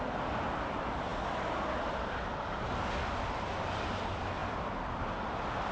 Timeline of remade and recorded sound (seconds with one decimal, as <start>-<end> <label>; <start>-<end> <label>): 0.0-5.7 recorded